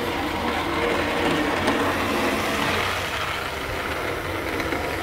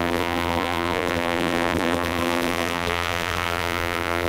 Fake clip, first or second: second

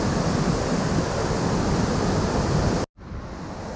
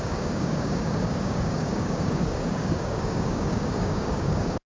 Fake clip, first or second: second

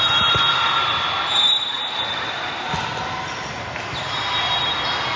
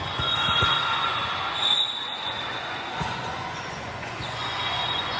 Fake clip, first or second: second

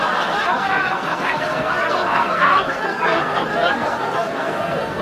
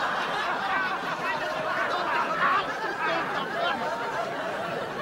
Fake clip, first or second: first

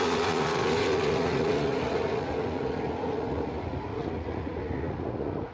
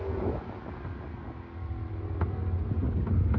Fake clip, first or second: first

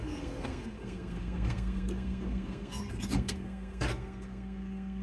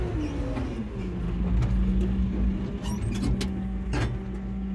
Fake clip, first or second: first